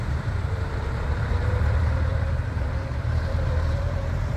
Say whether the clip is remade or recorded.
remade